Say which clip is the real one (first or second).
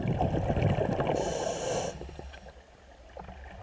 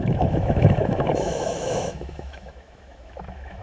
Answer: first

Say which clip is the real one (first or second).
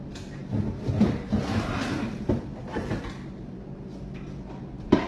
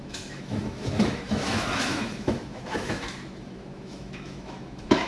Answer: first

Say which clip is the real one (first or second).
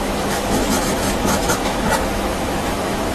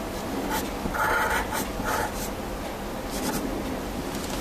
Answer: second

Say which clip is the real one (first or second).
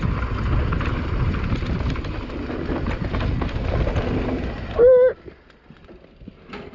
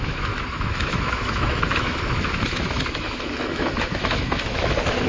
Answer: first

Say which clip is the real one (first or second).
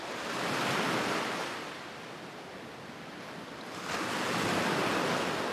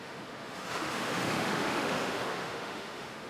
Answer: first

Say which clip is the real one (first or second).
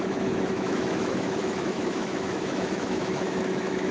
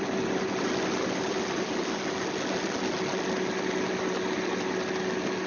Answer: second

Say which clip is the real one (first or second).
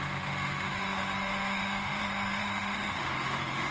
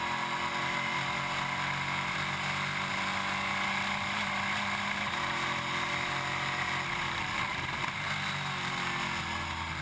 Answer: second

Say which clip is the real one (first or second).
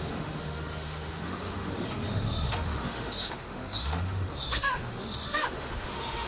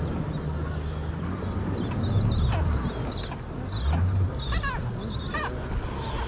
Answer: second